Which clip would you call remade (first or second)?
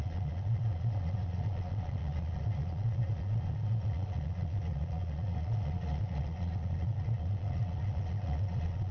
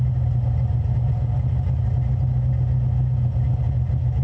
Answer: first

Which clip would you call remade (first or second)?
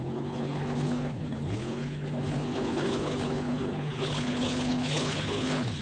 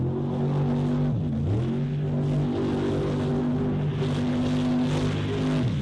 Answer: first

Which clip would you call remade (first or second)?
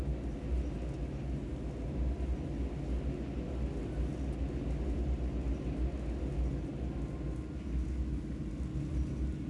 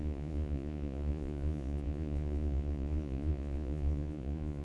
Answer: second